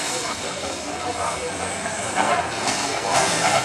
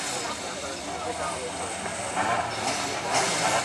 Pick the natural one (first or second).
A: second